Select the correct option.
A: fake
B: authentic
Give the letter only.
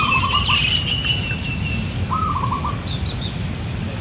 B